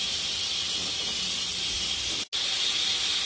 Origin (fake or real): real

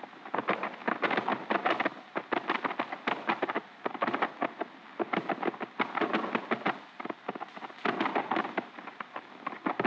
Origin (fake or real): real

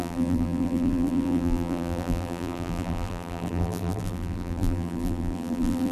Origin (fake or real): fake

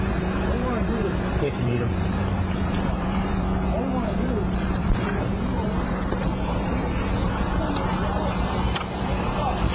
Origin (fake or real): fake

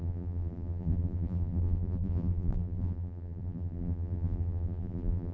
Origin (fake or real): fake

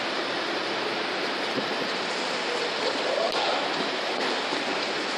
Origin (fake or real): real